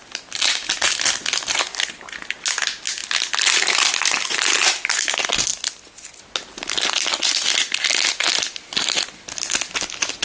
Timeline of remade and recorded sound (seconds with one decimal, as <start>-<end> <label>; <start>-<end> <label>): 0.0-10.2 recorded